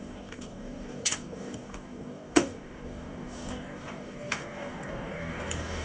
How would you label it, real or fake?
fake